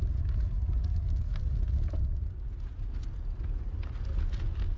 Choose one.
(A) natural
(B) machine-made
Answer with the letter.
A